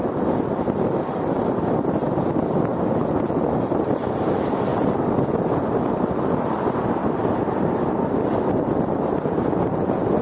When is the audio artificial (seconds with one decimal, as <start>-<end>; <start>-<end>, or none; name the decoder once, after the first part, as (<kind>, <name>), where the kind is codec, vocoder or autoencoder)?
none